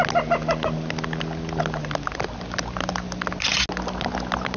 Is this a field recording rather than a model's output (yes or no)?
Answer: yes